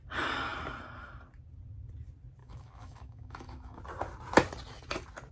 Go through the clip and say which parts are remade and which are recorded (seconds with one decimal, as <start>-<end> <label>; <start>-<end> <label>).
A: 0.0-2.4 recorded; 2.4-3.8 remade; 3.8-5.3 recorded